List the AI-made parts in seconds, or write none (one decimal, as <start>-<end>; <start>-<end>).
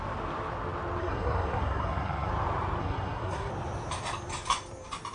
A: 1.0-2.3; 2.8-3.5